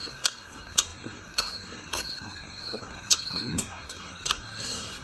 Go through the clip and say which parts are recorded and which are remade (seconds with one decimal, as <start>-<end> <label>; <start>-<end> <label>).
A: 0.0-5.0 remade